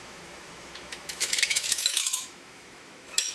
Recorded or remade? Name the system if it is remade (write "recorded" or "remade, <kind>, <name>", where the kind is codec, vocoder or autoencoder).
remade, autoencoder, DAC-VAE